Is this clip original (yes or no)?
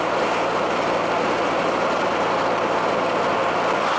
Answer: yes